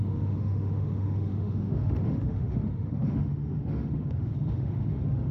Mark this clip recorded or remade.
remade